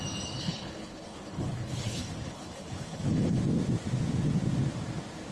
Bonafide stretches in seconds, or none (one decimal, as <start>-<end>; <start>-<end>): 0.0-0.4; 3.4-5.3

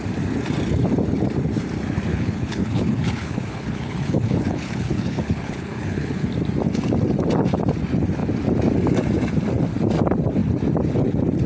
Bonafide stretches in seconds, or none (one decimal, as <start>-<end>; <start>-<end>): 0.0-2.1; 6.3-11.5

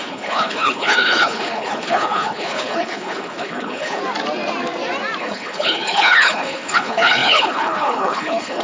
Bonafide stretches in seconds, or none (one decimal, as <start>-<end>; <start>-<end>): 4.0-5.2

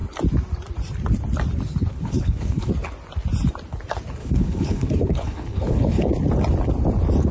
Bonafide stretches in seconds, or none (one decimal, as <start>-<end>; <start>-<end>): 0.0-1.9; 2.7-4.2; 6.1-7.3

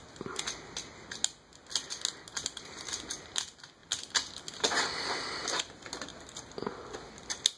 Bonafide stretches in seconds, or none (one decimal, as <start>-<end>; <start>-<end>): 0.0-7.6

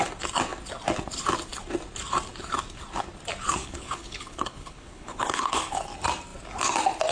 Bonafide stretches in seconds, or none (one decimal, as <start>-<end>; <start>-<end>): 0.0-3.6; 5.8-7.1

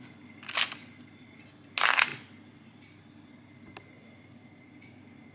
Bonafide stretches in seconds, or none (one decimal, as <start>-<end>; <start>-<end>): 0.0-5.3